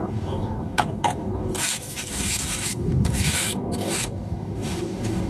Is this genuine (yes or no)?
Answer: no